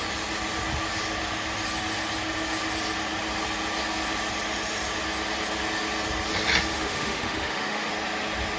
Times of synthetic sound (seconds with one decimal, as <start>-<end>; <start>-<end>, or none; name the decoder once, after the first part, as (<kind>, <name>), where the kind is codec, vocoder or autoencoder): 6.7-7.9 (autoencoder, DAC-VAE)